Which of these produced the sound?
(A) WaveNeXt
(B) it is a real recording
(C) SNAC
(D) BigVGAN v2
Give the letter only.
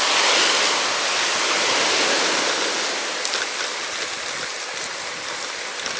B